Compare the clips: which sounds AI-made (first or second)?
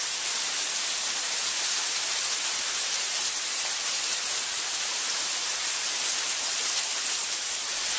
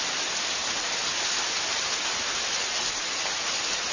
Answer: first